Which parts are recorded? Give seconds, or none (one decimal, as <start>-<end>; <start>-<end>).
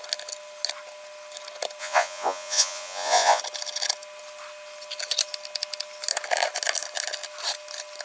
0.0-1.8; 3.4-8.0